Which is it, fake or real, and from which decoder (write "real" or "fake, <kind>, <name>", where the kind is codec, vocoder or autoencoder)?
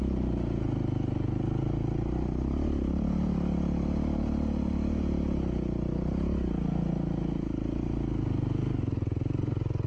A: real